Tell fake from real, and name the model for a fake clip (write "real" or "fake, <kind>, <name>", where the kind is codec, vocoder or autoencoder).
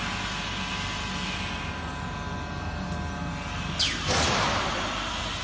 real